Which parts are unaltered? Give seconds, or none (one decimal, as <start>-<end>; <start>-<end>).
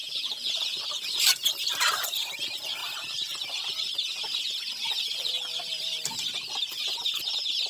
0.8-7.7